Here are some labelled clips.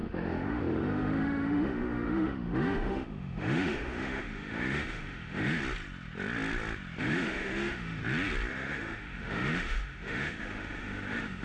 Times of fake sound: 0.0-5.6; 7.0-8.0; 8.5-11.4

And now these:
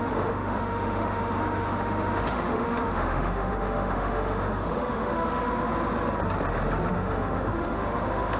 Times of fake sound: 0.0-5.7; 6.9-8.4

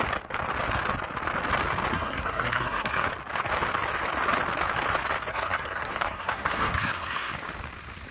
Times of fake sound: 1.9-3.1; 5.3-7.3

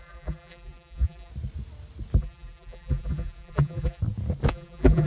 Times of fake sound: 0.0-1.3; 2.2-4.0; 4.5-5.1

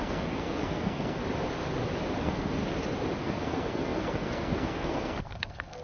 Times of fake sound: 0.0-1.2; 2.2-2.6; 3.2-5.8

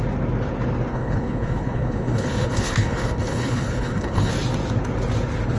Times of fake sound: 0.9-4.3